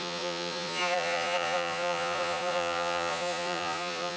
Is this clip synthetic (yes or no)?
yes